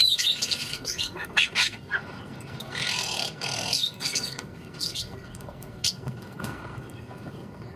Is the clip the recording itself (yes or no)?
no